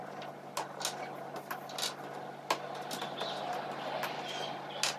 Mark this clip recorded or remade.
recorded